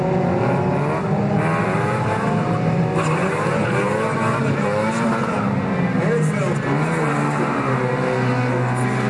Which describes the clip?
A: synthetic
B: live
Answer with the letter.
B